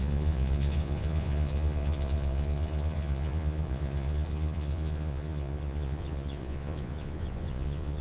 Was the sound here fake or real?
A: fake